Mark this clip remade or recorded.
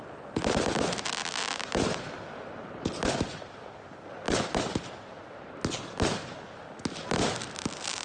recorded